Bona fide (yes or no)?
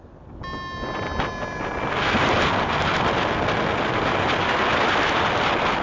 yes